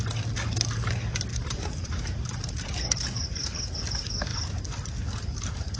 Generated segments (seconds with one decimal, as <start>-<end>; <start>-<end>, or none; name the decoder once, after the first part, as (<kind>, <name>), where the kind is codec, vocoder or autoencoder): 1.3-3.8 (vocoder, BigVGAN v2)